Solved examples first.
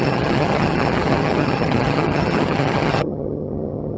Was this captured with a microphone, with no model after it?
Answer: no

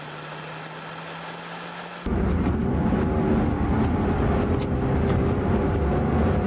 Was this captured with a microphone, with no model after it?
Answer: yes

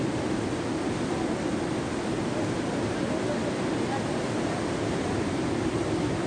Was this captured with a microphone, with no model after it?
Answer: yes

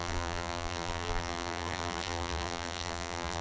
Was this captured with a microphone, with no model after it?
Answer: no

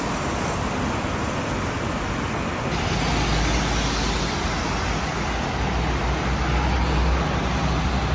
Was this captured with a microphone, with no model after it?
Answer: yes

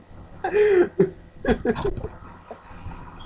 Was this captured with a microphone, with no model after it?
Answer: yes